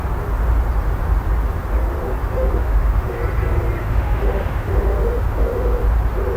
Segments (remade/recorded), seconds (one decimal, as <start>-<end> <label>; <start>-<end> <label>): 0.0-2.2 recorded; 2.2-3.2 remade; 3.2-3.8 recorded; 3.8-5.8 remade; 5.8-6.4 recorded